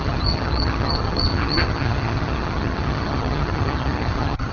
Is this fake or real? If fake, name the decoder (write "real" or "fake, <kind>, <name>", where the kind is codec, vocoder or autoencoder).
fake, vocoder, HiFi-GAN